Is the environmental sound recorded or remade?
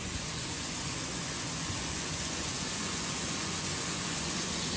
remade